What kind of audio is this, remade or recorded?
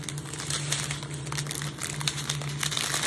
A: recorded